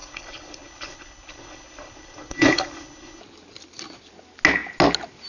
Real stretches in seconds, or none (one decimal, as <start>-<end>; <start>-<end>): 3.2-5.3